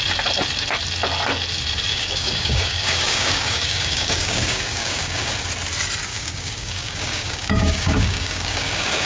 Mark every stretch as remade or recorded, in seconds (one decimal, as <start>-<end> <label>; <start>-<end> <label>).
0.0-1.9 recorded; 1.9-5.3 remade; 5.3-6.1 recorded; 6.1-9.1 remade